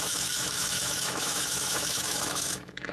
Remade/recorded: remade